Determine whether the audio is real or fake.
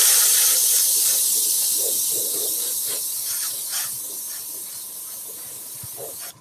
fake